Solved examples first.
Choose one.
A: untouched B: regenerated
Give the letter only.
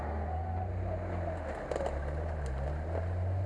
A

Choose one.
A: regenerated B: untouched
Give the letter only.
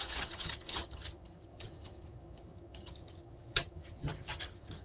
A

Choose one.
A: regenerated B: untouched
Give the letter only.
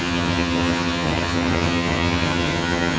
A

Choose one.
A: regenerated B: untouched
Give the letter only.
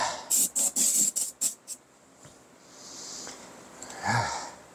B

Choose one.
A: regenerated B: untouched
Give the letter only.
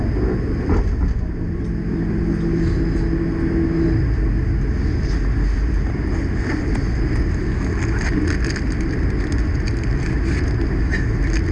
B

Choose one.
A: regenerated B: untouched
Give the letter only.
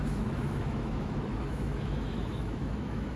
A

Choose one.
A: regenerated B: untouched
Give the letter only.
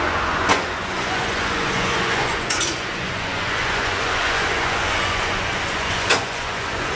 A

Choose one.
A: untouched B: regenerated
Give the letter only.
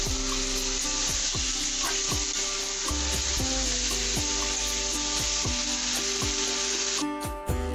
A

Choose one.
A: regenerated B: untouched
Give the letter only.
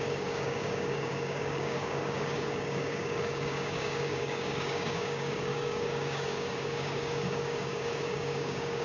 A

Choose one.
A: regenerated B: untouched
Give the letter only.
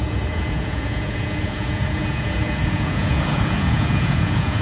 A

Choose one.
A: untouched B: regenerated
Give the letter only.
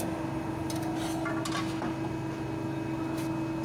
A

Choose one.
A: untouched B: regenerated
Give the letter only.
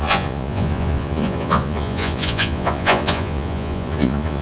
B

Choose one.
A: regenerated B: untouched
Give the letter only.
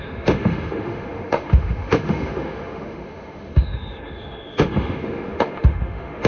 A